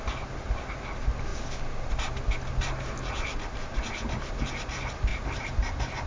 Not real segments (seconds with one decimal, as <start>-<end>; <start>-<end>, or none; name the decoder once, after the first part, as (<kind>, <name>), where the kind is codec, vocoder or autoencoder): 5.1-6.1 (vocoder, BigVGAN v2)